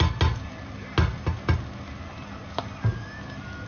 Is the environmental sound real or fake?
real